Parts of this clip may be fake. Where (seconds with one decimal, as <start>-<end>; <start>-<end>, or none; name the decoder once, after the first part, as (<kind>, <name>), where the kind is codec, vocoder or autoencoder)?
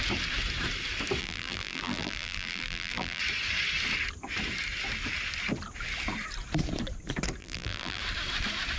1.2-3.2 (vocoder, BigVGAN v2); 7.4-8.0